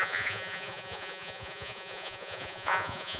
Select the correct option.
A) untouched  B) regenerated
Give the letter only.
B